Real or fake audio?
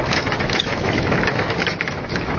fake